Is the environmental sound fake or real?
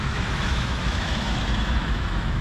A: fake